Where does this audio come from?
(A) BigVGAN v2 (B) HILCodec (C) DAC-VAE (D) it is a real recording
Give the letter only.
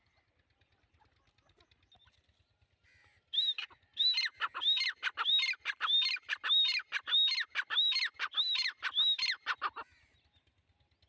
D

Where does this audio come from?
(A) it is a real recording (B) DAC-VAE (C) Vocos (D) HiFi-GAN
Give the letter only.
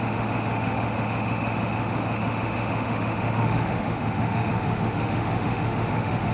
B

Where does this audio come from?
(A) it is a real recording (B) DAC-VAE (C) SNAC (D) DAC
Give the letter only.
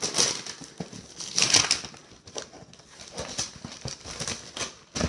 A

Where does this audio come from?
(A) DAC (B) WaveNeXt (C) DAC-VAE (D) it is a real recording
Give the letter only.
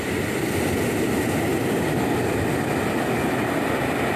D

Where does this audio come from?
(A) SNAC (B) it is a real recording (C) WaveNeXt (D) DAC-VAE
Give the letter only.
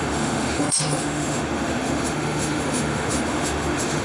D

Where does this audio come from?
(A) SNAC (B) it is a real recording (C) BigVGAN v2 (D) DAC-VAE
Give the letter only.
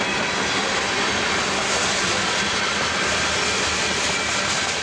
B